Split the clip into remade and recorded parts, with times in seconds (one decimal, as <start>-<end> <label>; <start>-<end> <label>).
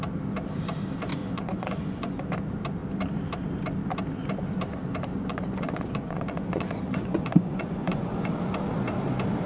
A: 0.0-1.2 recorded; 1.2-2.2 remade; 2.2-5.1 recorded; 5.1-8.3 remade; 8.3-9.5 recorded